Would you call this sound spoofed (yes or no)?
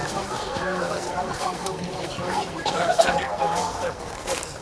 yes